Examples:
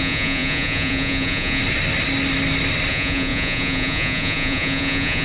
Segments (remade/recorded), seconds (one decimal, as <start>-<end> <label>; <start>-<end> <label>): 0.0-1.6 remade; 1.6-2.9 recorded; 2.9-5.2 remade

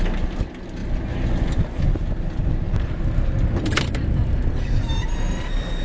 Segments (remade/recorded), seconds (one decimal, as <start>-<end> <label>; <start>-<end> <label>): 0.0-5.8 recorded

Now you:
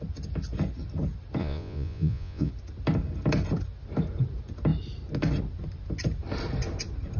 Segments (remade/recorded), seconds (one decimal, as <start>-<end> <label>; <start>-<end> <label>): 0.0-1.4 recorded; 1.4-2.5 remade; 2.5-7.2 recorded

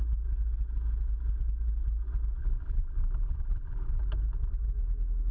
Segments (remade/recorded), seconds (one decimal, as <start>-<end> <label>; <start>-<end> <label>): 0.0-2.4 recorded; 2.4-4.0 remade; 4.0-5.3 recorded